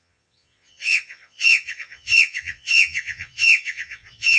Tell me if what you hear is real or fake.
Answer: fake